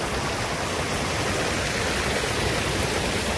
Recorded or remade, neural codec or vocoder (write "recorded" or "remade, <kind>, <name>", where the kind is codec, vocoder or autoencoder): recorded